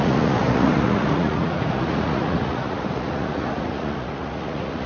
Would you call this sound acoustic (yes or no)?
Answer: no